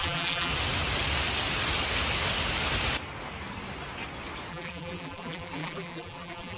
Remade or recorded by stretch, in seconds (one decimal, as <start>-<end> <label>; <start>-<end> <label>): 0.0-0.5 remade; 0.5-4.5 recorded; 4.5-6.6 remade